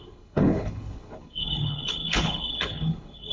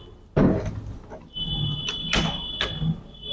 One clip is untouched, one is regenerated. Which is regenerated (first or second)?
first